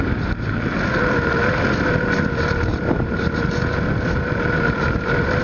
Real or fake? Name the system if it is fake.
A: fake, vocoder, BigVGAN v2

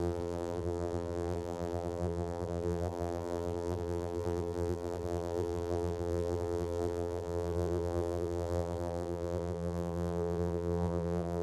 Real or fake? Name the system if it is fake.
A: fake, vocoder, BigVGAN v2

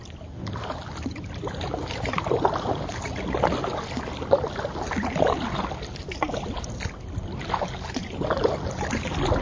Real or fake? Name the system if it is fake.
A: real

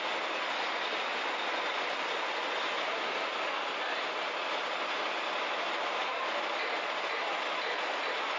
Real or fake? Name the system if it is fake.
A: real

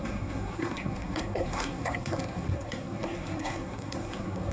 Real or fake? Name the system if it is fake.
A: fake, codec, SNAC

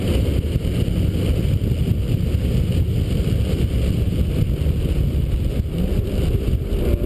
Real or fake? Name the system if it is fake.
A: real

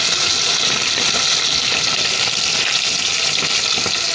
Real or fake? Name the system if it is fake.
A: real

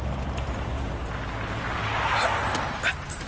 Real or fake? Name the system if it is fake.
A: real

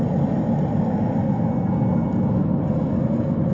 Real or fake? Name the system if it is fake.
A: real